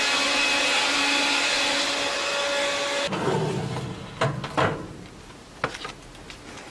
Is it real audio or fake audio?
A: real